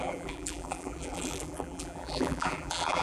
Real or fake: fake